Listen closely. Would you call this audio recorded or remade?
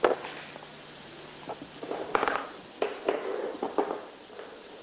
recorded